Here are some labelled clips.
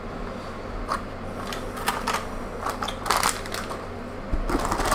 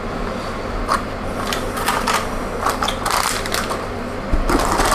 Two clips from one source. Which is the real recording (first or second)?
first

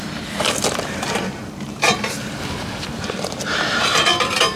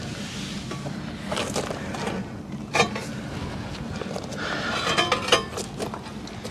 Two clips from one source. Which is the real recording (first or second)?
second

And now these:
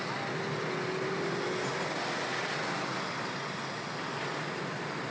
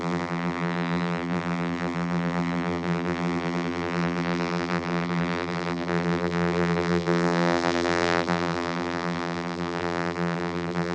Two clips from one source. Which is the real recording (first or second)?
first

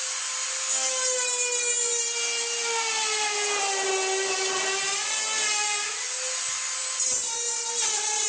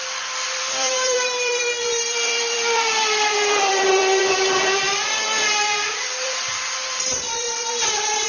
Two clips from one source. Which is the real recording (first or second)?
first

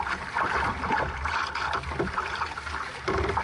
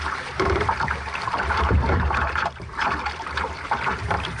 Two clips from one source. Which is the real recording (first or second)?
first